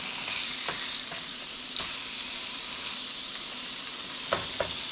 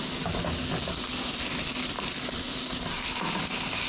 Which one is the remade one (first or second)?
first